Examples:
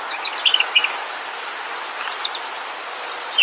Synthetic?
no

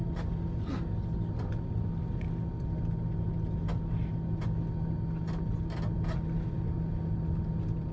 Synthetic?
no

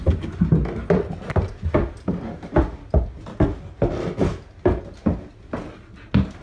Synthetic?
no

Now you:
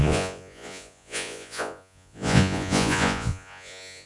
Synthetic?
yes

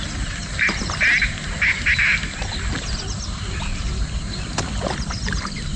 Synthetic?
no